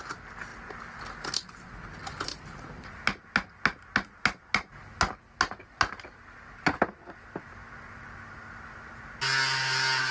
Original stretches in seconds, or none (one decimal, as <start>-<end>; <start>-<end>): 0.0-10.1

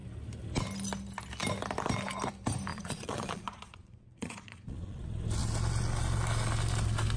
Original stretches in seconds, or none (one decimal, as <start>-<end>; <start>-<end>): 0.0-2.7; 5.0-7.2